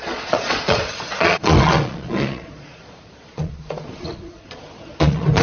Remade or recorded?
remade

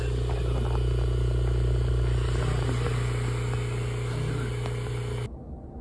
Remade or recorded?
recorded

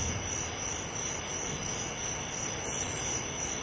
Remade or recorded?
recorded